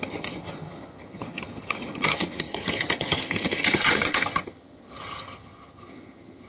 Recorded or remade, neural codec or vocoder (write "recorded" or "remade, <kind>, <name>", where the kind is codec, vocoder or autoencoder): remade, vocoder, HiFi-GAN